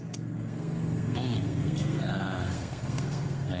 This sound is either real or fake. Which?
fake